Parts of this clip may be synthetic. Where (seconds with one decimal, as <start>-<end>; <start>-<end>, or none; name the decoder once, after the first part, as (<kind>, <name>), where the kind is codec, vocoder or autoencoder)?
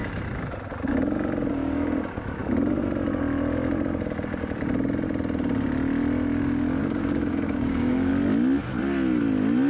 1.5-2.4 (codec, DAC); 6.8-8.1